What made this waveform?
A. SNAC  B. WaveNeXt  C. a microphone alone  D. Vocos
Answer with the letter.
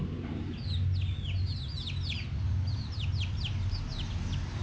C